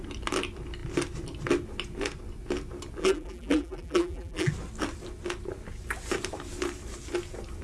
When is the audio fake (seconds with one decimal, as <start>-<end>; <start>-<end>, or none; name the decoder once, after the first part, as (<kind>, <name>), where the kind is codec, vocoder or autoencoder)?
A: 3.0-4.5 (vocoder, BigVGAN v2)